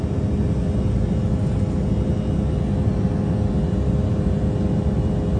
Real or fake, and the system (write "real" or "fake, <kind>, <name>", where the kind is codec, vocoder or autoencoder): real